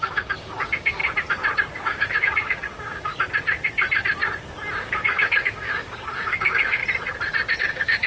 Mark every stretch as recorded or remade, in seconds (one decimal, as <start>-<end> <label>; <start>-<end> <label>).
0.0-1.0 remade; 1.0-1.8 recorded; 1.8-3.1 remade; 3.1-4.8 recorded; 4.8-6.8 remade; 6.8-7.6 recorded; 7.6-8.1 remade